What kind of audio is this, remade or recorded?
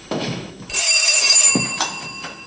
remade